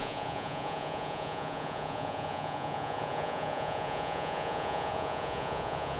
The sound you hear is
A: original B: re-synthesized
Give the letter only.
B